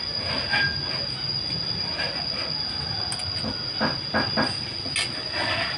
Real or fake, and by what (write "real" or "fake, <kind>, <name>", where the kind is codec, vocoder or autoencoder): real